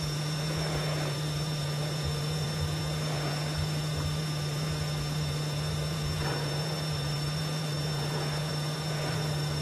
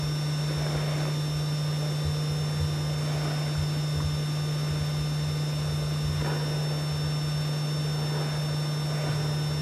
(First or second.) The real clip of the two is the second